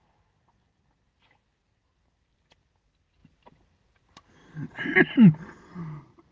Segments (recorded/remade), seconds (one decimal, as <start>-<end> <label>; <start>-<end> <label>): 0.0-6.3 recorded